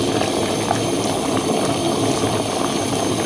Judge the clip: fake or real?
real